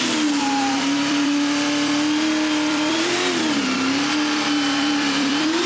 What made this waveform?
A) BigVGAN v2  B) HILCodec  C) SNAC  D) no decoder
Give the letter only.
A